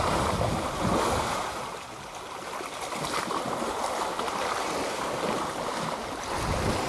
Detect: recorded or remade recorded